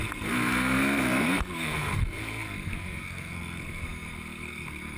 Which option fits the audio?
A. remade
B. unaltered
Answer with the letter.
A